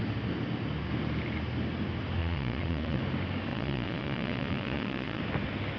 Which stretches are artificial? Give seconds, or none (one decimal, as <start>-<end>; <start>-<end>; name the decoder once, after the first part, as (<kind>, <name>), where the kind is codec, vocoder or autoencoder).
2.2-3.0 (vocoder, Vocos); 3.5-5.2